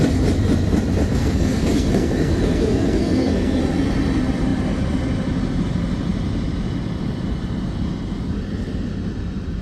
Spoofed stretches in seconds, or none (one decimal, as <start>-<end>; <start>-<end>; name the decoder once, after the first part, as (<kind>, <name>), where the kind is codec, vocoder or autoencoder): 1.2-3.6 (codec, SNAC)